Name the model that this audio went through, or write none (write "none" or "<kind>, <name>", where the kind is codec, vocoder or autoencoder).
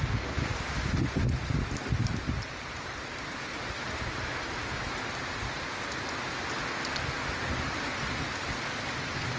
none